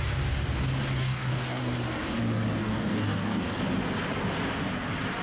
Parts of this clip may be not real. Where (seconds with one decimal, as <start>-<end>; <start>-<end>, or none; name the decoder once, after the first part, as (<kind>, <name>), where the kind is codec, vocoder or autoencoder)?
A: 1.0-1.6 (codec, DAC); 2.6-3.6